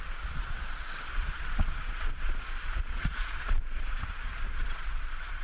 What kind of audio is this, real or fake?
fake